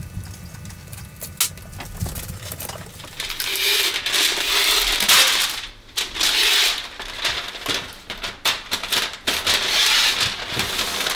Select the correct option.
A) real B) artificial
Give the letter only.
A